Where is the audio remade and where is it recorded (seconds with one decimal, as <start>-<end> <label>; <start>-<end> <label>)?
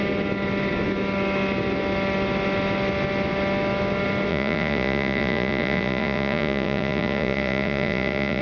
0.0-4.3 recorded; 4.3-8.4 remade